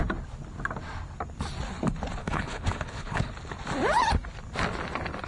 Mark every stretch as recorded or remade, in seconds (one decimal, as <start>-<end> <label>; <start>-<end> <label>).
0.0-2.2 recorded; 2.2-3.3 remade; 3.3-5.3 recorded